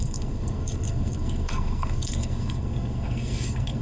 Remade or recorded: remade